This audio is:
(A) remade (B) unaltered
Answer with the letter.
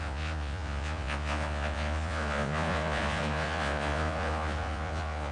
A